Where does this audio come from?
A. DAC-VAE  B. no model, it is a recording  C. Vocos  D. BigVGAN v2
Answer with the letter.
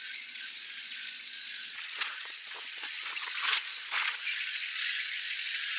C